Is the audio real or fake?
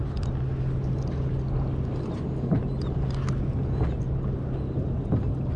real